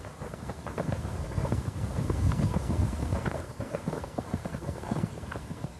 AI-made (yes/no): yes